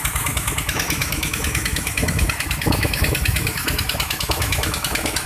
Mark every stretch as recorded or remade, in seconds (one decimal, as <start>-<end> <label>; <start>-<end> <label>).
0.0-5.3 remade